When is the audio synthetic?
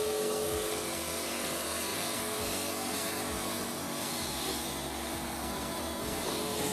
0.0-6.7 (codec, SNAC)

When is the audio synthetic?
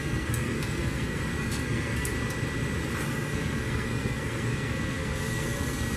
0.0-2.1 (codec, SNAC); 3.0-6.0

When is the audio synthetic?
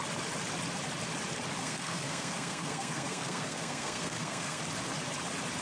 1.6-4.6 (codec, SNAC)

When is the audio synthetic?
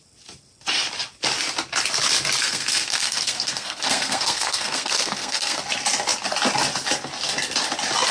2.4-5.6 (codec, SNAC)